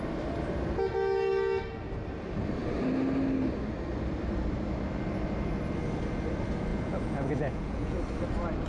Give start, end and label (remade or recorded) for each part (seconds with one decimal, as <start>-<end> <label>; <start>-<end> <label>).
0.0-6.7 recorded; 6.7-8.0 remade; 8.0-8.7 recorded